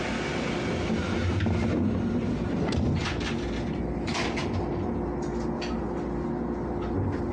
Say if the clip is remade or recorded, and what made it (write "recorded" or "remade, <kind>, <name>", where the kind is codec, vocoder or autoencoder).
recorded